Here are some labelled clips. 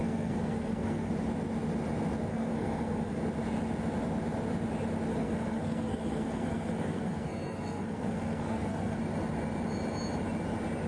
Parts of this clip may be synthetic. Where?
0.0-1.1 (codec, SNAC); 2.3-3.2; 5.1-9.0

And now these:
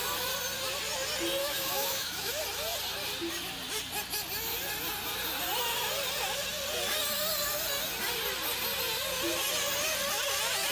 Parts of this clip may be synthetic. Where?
1.4-2.3 (autoencoder, DAC-VAE)